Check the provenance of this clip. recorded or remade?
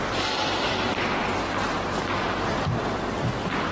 remade